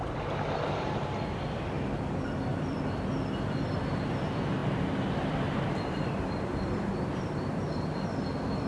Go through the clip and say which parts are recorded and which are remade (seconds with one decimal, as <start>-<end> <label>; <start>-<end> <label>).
0.0-4.6 remade; 4.6-5.7 recorded; 5.7-8.7 remade